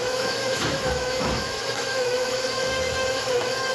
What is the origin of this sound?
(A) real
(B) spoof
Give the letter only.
B